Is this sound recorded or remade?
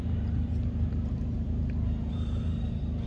remade